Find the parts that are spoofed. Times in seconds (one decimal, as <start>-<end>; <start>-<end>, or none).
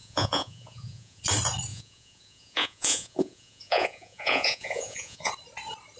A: 0.0-1.2; 1.7-5.3